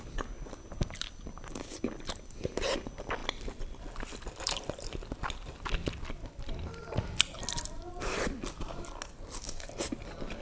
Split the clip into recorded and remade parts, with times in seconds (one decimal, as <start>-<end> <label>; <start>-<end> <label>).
0.0-10.4 recorded